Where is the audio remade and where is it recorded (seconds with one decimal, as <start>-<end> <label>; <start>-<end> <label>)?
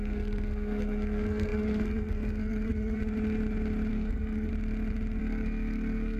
0.0-3.0 remade; 3.0-3.9 recorded; 3.9-4.5 remade; 4.5-5.2 recorded; 5.2-6.2 remade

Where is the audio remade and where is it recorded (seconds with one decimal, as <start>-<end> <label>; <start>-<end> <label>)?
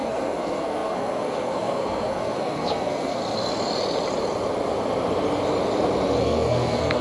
0.0-3.2 remade; 3.2-6.2 recorded; 6.2-7.0 remade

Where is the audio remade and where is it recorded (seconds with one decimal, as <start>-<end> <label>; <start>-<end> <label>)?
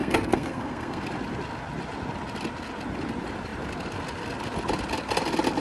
0.0-1.0 remade; 1.0-5.6 recorded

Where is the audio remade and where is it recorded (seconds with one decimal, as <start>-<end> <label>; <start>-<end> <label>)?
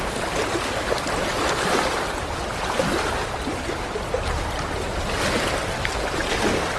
0.0-6.8 recorded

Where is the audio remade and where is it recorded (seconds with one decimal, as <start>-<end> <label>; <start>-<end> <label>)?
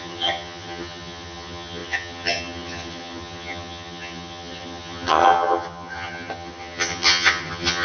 0.0-7.8 remade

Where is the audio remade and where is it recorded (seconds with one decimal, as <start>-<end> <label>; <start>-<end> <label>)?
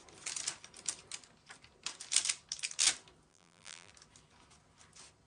0.0-3.3 recorded; 3.3-3.9 remade; 3.9-5.3 recorded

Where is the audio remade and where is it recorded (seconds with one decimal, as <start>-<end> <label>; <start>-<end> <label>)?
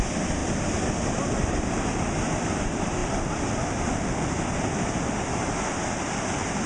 0.0-6.7 recorded